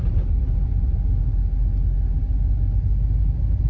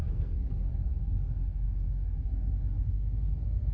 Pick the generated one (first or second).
second